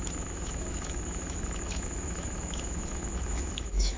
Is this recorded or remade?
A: remade